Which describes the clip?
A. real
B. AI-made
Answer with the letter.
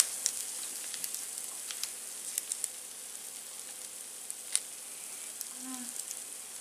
A